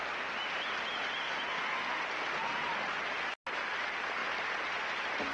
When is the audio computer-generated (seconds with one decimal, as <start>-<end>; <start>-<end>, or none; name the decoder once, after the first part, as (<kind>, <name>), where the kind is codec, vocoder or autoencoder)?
none